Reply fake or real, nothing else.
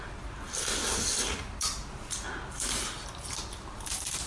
real